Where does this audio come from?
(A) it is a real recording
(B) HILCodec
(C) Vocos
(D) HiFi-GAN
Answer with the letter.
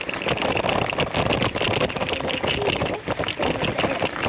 A